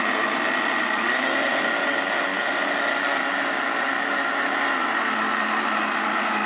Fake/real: real